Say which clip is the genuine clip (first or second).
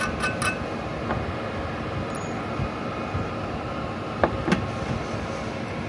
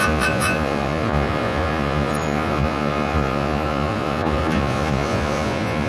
first